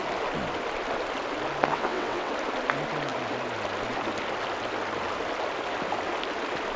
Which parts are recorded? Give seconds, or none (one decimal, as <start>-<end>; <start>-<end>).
0.0-1.7; 2.3-6.8

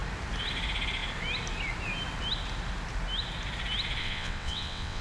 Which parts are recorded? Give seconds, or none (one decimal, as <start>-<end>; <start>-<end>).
0.0-4.0

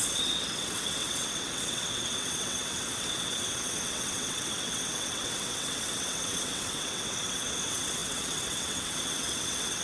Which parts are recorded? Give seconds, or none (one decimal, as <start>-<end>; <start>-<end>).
none

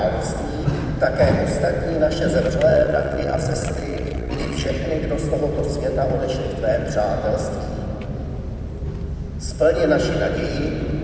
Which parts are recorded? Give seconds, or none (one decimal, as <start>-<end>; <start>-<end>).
0.0-2.7; 4.7-11.0

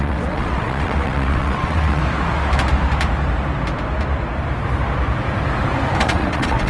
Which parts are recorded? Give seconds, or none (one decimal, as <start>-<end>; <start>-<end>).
2.0-6.0